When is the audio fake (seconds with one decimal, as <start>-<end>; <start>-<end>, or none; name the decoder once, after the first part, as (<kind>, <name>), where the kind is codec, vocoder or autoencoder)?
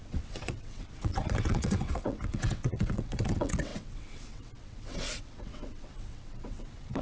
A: 0.0-7.0 (vocoder, WaveNeXt)